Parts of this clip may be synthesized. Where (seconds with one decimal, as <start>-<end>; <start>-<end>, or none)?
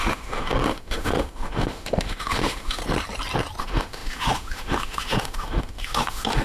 0.0-2.8; 3.6-6.4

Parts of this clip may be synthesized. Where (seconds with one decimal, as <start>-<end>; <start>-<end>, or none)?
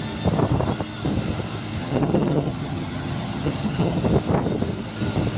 1.8-4.0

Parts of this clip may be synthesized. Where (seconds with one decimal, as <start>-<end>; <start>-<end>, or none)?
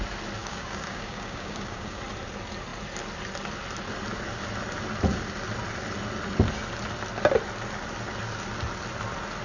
0.4-2.0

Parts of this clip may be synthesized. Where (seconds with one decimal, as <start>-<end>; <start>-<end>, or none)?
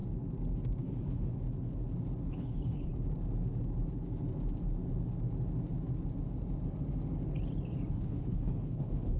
0.8-1.3; 2.3-2.9; 7.9-9.2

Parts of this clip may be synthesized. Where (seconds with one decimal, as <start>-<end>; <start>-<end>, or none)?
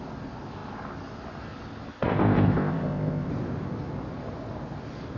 1.9-3.3